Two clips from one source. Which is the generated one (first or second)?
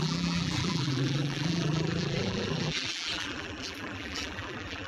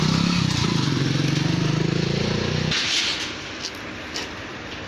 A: first